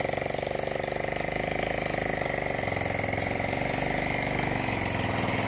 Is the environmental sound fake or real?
real